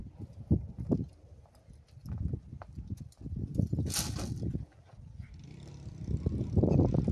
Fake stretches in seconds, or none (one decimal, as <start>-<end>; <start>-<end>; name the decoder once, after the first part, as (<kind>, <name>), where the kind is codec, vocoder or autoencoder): none